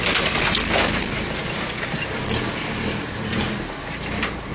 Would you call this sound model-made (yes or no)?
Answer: no